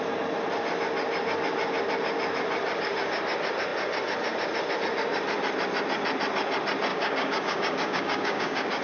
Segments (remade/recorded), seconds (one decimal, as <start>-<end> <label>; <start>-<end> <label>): 0.0-6.9 recorded; 6.9-8.8 remade